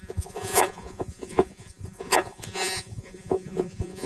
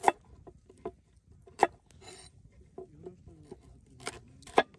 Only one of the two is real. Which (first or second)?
second